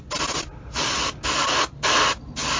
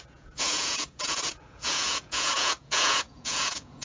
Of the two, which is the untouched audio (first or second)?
first